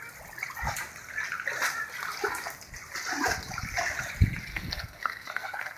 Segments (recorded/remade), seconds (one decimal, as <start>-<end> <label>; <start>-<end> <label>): 0.0-4.5 recorded; 4.5-5.8 remade